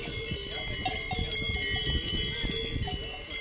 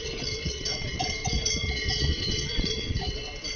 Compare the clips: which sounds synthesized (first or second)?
second